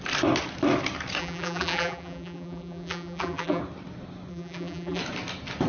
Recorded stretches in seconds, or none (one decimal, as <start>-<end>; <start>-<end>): 0.0-1.2; 3.6-4.3; 5.0-5.7